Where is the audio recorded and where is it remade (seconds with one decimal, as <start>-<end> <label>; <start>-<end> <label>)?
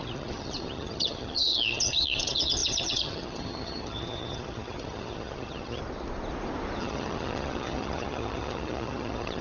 0.0-5.8 remade; 5.8-6.8 recorded; 6.8-9.4 remade